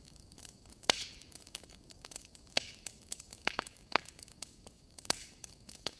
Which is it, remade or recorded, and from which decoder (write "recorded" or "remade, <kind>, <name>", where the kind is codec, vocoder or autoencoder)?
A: remade, codec, DAC